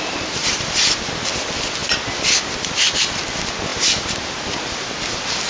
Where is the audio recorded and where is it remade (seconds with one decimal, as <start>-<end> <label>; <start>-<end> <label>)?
0.0-0.4 recorded; 0.4-1.1 remade; 1.1-3.7 recorded; 3.7-4.3 remade; 4.3-5.5 recorded